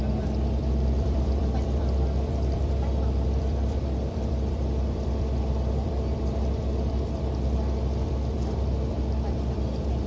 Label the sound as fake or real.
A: fake